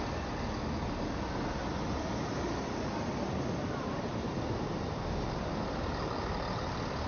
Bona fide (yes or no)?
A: yes